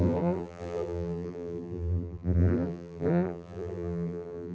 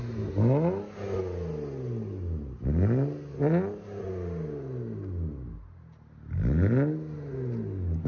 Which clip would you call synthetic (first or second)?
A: first